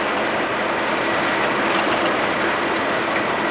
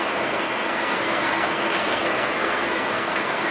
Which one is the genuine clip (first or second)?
first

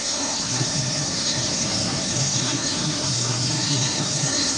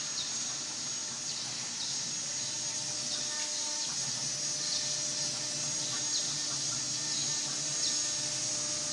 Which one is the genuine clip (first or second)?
second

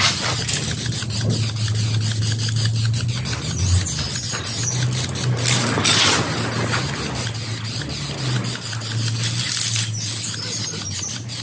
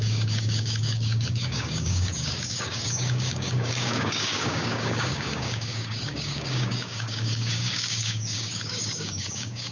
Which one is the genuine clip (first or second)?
first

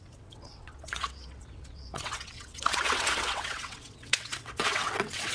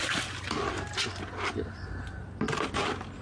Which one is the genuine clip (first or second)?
second